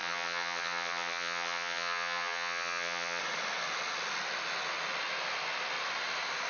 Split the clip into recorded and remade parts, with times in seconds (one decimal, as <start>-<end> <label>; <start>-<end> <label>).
0.0-3.2 remade; 3.2-6.5 recorded